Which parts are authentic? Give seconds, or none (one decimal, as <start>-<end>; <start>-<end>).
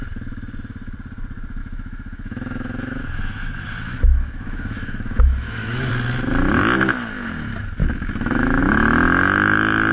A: 0.0-1.6; 5.9-7.8; 8.6-9.9